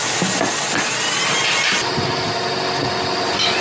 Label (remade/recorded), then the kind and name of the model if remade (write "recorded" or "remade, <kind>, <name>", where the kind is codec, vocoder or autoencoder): recorded